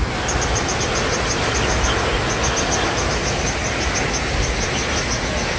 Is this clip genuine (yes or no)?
yes